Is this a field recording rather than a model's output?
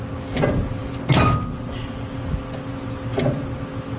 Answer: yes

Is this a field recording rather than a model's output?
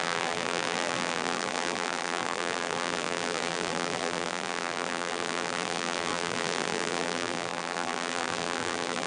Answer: no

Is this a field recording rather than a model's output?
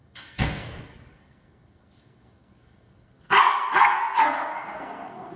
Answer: no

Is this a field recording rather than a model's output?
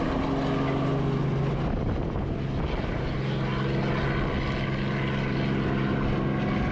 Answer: yes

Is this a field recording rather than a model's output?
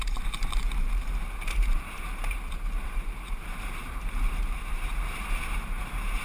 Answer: no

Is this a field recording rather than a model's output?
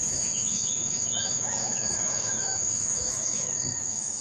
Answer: no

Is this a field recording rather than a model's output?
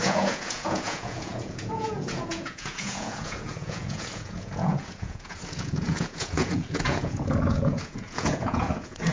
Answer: no